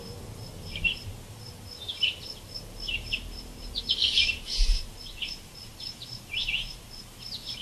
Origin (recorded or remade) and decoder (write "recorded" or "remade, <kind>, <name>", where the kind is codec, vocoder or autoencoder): recorded